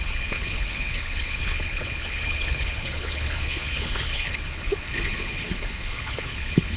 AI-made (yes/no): yes